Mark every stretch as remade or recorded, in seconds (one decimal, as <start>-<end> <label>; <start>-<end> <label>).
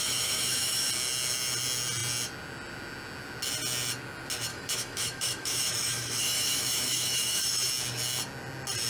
0.0-0.9 remade; 0.9-4.5 recorded; 4.5-7.7 remade; 7.7-8.9 recorded